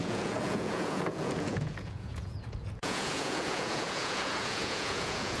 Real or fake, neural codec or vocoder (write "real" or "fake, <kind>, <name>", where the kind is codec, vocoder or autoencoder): fake, vocoder, Vocos